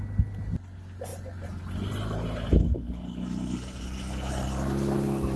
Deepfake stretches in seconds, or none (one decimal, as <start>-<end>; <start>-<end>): none